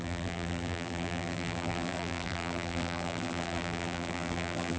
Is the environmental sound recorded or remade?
remade